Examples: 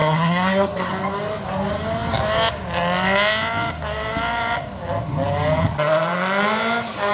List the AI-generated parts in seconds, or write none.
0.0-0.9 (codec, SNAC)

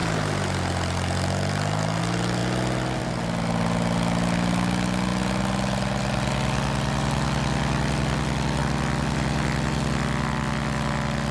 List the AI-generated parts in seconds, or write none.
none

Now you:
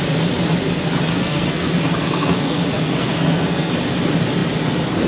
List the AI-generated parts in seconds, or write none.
1.1-3.7 (codec, SNAC)

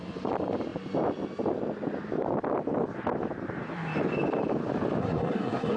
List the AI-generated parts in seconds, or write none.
5.0-5.8 (codec, SNAC)